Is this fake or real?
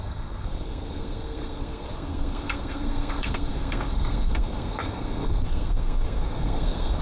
fake